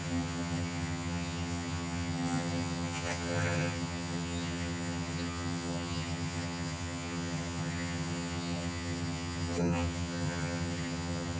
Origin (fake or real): fake